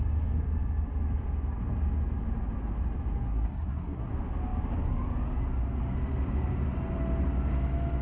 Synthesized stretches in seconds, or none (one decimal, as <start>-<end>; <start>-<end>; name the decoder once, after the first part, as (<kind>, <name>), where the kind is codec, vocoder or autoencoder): 3.3-4.1 (codec, SNAC)